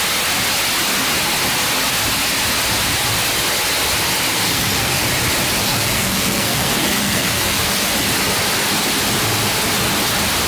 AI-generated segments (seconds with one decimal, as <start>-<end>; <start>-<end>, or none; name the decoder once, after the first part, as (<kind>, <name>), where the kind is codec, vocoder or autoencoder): 4.3-5.0 (codec, SNAC); 5.6-7.9